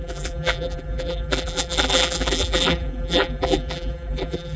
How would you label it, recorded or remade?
remade